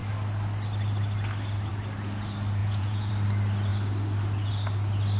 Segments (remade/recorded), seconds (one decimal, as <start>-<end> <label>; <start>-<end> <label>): 0.0-2.6 recorded; 2.6-3.1 remade; 3.1-5.2 recorded